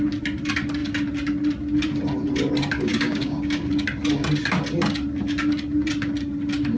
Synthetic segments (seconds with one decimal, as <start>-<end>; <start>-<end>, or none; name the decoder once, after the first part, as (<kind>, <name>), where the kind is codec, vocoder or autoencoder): 2.9-3.7 (codec, DAC)